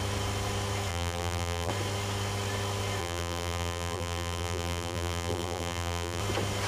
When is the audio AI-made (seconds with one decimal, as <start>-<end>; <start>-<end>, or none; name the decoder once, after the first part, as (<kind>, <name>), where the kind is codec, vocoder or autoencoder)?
0.9-1.7 (vocoder, BigVGAN v2); 3.0-6.2